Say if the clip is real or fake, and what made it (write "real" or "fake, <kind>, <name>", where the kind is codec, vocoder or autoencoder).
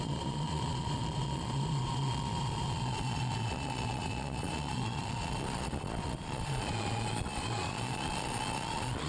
fake, vocoder, Vocos